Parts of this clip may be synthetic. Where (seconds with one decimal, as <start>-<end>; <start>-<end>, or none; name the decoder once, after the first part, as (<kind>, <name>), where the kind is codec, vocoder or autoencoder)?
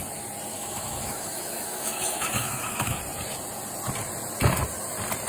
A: 0.5-3.0 (autoencoder, DAC-VAE)